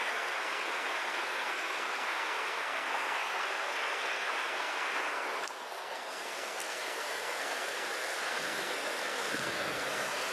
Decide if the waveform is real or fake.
fake